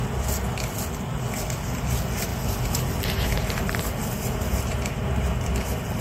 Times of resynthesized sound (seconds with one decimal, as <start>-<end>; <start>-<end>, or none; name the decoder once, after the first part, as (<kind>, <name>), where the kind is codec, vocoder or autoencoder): 2.3-5.2 (vocoder, BigVGAN v2)